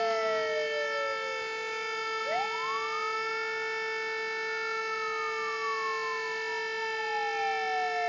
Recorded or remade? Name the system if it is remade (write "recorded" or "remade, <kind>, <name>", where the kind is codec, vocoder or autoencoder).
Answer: recorded